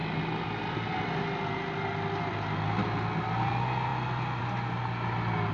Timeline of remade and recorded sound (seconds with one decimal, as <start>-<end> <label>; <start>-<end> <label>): 0.0-5.5 recorded